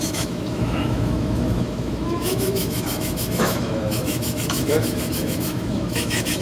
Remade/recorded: remade